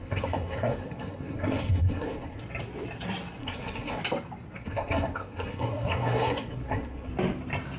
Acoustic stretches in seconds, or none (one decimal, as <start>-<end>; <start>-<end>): 2.4-3.4; 4.0-4.6; 7.1-7.8